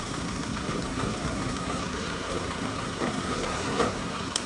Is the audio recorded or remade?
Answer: remade